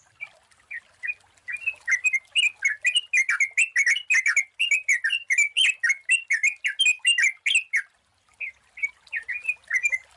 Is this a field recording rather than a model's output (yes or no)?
yes